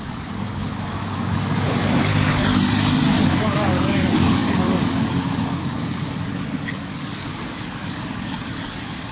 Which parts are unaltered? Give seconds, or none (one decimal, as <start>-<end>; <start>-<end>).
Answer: 2.1-3.2